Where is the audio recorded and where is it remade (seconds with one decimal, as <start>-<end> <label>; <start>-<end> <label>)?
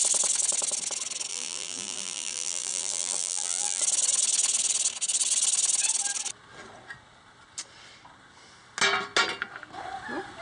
0.0-1.3 recorded; 1.3-3.8 remade; 3.8-10.4 recorded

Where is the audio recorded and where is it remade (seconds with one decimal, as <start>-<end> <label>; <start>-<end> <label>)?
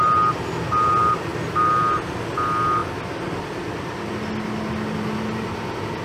0.0-6.0 recorded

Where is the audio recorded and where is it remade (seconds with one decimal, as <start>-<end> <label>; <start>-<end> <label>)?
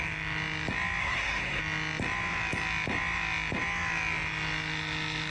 0.0-1.0 recorded; 1.0-1.6 remade; 1.6-5.3 recorded